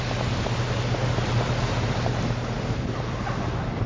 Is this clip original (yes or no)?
yes